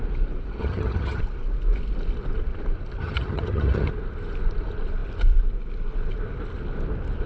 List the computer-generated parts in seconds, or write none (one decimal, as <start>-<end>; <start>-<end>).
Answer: 0.6-1.2; 3.0-3.9